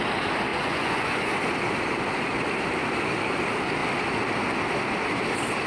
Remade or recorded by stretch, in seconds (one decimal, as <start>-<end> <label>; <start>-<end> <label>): 0.0-0.5 recorded; 0.5-1.3 remade; 1.3-5.7 recorded